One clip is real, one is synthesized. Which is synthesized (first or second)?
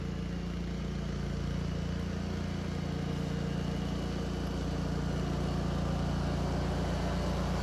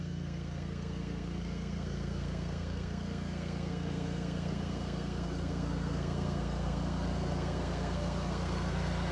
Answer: second